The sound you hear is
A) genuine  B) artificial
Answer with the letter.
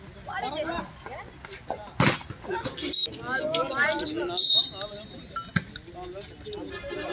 A